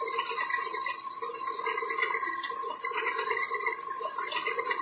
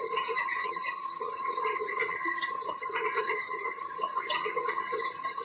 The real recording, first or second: first